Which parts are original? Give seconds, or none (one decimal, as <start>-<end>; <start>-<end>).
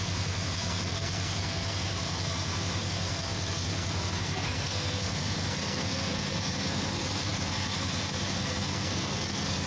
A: none